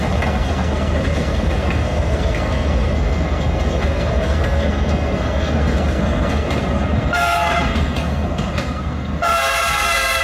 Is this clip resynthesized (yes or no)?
yes